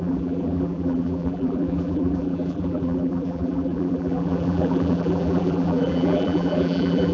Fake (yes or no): yes